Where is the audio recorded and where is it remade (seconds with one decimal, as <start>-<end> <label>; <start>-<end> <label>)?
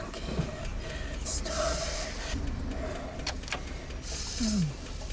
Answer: 0.0-5.1 recorded